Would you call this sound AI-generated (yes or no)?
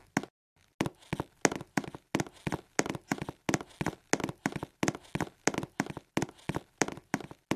no